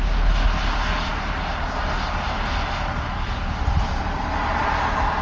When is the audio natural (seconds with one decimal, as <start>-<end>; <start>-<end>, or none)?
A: 0.0-5.2